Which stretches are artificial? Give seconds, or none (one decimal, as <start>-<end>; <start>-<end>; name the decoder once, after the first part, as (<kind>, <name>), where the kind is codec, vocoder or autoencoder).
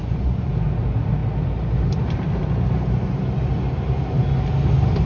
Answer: 0.0-0.5 (vocoder, Vocos)